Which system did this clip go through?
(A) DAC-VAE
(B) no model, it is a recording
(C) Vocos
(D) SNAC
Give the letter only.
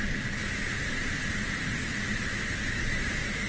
B